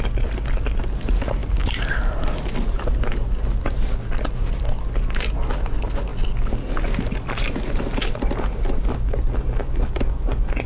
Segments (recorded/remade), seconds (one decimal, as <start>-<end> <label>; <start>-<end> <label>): 0.0-10.7 recorded